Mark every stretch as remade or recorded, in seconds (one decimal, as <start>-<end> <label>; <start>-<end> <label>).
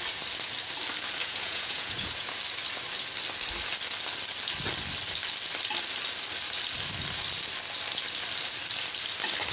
0.0-1.2 recorded; 1.2-2.4 remade; 2.4-9.5 recorded